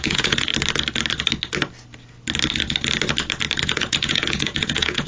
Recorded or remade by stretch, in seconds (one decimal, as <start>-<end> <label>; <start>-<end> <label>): 0.0-0.5 remade; 0.5-3.6 recorded; 3.6-5.1 remade

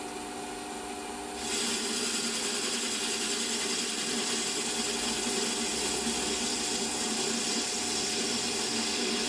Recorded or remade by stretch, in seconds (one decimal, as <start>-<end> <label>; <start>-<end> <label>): 0.0-9.3 recorded